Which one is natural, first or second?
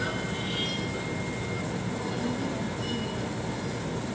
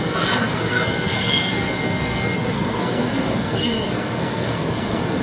first